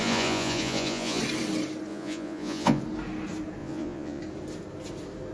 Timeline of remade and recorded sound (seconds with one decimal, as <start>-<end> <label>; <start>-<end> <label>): 0.0-1.2 remade; 1.2-1.9 recorded; 1.9-2.8 remade; 2.8-3.6 recorded; 3.6-4.2 remade; 4.2-5.3 recorded